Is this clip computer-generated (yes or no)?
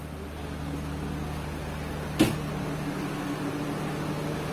no